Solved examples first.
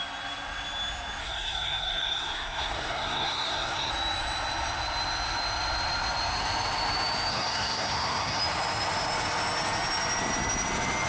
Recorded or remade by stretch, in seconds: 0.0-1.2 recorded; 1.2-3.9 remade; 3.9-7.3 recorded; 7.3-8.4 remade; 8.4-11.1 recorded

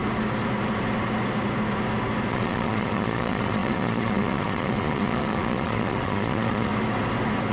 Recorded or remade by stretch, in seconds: 0.0-2.3 recorded; 2.3-6.7 remade; 6.7-7.5 recorded

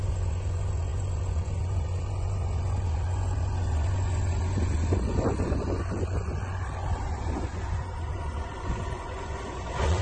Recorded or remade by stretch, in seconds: 0.0-10.0 remade